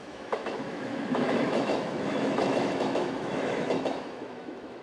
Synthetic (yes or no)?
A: yes